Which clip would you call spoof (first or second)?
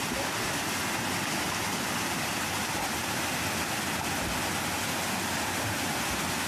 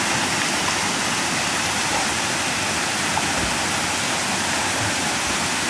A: second